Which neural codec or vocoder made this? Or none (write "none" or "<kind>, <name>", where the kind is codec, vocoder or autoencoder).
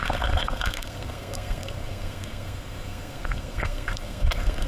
codec, SNAC